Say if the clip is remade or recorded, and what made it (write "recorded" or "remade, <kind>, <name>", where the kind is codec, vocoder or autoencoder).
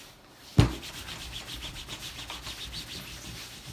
recorded